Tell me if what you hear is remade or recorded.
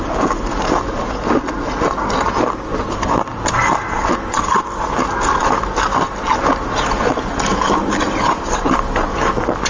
recorded